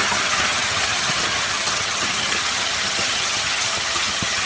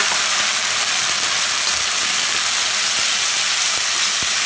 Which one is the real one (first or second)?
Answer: second